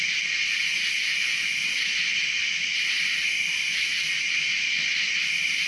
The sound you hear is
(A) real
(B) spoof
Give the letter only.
A